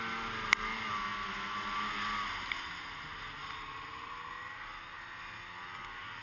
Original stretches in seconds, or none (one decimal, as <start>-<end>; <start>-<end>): 0.0-6.2